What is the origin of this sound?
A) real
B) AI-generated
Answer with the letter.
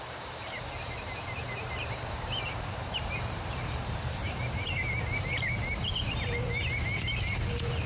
B